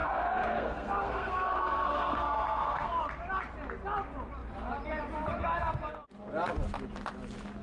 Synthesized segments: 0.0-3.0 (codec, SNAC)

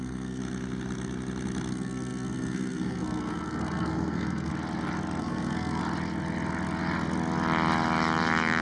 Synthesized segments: 0.0-0.4 (codec, SNAC); 1.7-4.5; 5.2-5.8

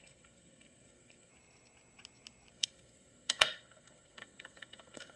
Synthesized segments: 0.0-1.3 (codec, SNAC); 2.5-5.2

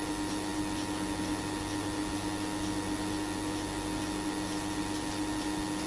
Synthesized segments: none

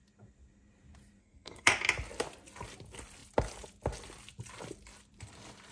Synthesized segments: 1.2-1.7 (codec, SNAC)